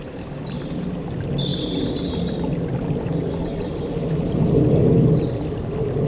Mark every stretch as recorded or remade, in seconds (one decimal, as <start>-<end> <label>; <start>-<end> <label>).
0.0-6.1 recorded